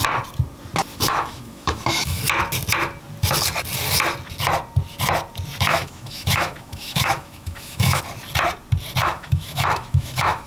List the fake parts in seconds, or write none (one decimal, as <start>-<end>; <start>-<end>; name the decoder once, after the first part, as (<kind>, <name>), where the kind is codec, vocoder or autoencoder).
0.9-2.2 (autoencoder, DAC-VAE); 5.7-8.0; 9.0-10.5